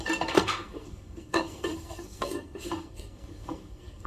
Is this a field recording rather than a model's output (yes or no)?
no